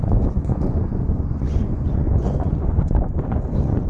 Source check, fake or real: fake